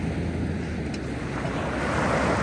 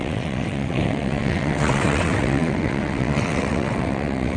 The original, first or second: first